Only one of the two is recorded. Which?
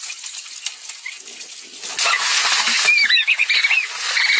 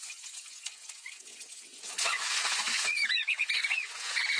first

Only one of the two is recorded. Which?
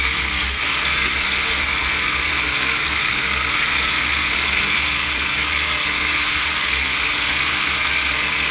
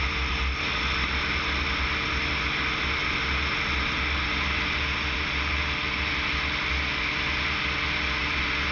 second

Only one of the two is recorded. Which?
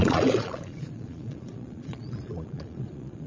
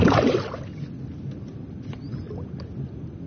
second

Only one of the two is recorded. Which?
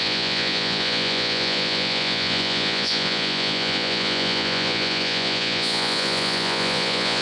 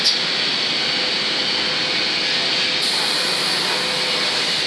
second